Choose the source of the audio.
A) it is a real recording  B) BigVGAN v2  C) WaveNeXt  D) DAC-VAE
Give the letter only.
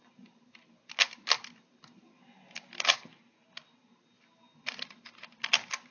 A